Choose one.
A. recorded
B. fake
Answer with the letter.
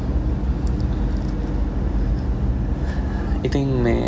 A